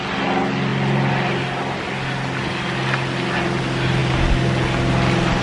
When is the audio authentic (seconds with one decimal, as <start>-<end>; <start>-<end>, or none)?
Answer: 0.0-5.4